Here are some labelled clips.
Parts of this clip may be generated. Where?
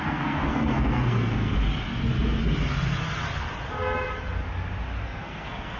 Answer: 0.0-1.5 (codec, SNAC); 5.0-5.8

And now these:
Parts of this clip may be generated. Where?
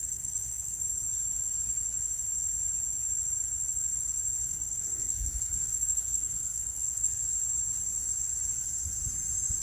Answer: 0.0-0.8 (codec, SNAC); 4.5-7.2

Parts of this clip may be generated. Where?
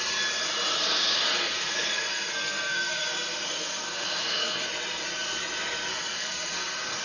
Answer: 0.7-4.7 (codec, SNAC); 5.9-7.0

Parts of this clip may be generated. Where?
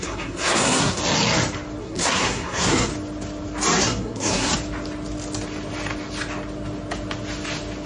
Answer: 0.0-1.0 (codec, SNAC); 1.8-2.9; 3.8-4.5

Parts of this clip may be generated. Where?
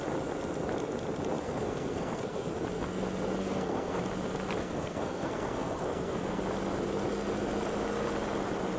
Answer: 1.4-2.5 (codec, SNAC); 3.4-4.0; 4.6-6.4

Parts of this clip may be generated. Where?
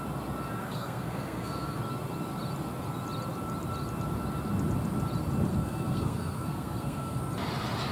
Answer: 0.6-1.8 (codec, SNAC); 5.5-7.2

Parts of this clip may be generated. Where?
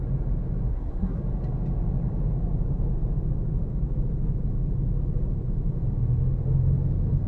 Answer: 0.7-1.2 (codec, SNAC)